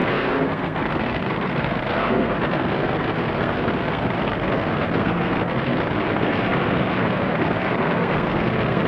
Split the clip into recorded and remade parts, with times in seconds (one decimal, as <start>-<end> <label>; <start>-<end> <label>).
0.0-8.9 remade